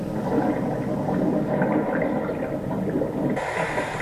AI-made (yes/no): no